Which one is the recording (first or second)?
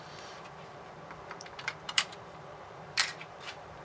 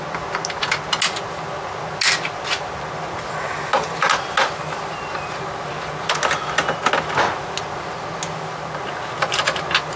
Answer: second